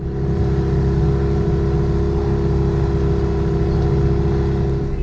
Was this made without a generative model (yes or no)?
yes